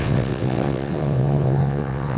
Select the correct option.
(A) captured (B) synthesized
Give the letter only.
B